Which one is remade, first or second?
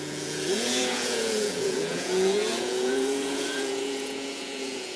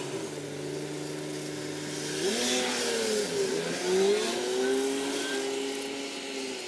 first